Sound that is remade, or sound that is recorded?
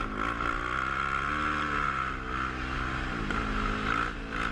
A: recorded